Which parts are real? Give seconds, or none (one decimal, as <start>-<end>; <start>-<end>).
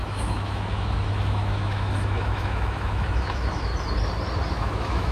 3.7-4.5